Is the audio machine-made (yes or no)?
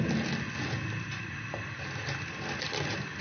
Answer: no